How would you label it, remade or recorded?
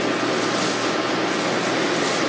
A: recorded